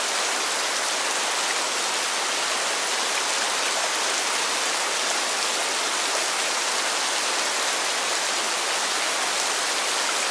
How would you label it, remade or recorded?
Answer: recorded